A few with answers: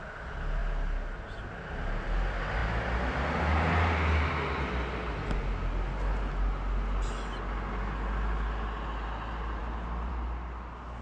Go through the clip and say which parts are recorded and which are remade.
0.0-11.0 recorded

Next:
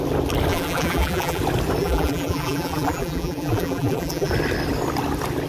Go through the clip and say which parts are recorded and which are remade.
0.0-0.5 recorded; 0.5-1.4 remade; 1.4-1.8 recorded; 1.8-4.3 remade; 4.3-5.5 recorded

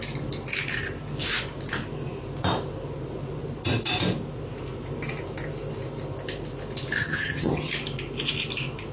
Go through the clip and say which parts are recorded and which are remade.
0.0-7.0 recorded; 7.0-7.7 remade; 7.7-8.9 recorded

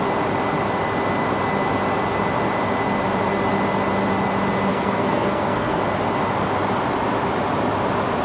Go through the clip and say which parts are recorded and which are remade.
0.0-4.7 recorded; 4.7-5.8 remade; 5.8-8.2 recorded

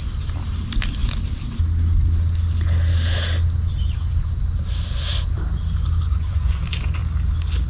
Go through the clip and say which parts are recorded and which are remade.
0.0-6.1 recorded; 6.1-6.6 remade; 6.6-7.7 recorded

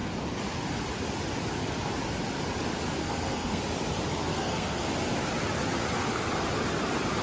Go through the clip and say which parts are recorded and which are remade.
0.0-3.0 recorded; 3.0-3.6 remade; 3.6-4.3 recorded; 4.3-4.9 remade; 4.9-7.2 recorded

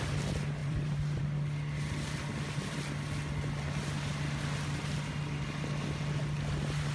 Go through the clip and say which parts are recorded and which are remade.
0.0-0.6 recorded; 0.6-1.2 remade; 1.2-6.9 recorded

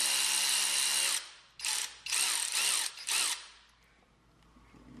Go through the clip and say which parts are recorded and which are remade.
0.0-5.0 recorded